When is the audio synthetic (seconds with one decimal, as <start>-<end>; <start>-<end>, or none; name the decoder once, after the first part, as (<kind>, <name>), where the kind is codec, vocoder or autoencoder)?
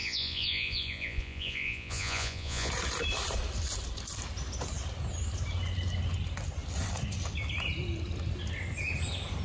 0.0-2.7 (vocoder, Vocos)